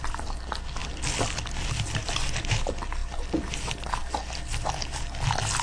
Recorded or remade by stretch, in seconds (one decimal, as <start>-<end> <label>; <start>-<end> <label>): 0.0-5.6 recorded